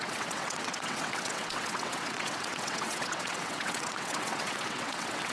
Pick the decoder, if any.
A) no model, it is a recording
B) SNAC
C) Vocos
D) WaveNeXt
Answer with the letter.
D